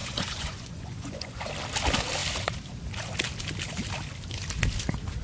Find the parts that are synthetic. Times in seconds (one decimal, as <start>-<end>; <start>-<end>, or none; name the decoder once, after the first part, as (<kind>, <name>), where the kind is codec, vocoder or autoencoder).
0.0-1.5 (vocoder, Vocos)